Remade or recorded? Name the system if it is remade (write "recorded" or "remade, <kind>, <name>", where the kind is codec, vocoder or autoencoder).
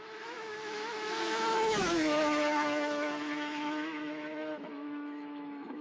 remade, autoencoder, DAC-VAE